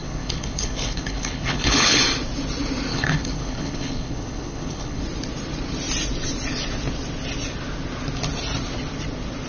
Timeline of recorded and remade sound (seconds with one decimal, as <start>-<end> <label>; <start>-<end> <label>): 0.0-2.0 remade; 2.0-2.9 recorded; 2.9-5.0 remade; 5.0-9.5 recorded